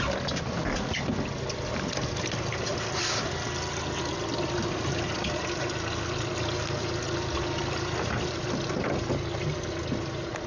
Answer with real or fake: real